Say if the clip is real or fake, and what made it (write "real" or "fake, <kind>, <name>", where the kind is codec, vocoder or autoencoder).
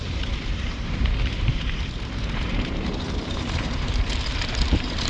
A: fake, vocoder, BigVGAN v2